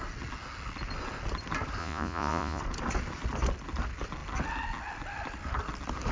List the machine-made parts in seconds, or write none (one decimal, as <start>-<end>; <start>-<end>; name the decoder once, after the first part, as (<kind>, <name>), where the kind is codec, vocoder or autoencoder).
1.8-2.6 (vocoder, Vocos)